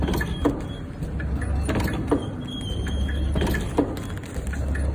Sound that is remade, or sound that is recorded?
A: recorded